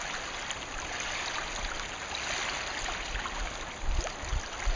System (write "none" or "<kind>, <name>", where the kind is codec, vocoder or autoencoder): none